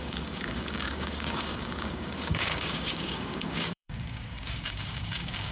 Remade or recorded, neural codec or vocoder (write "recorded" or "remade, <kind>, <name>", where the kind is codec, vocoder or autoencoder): remade, codec, DAC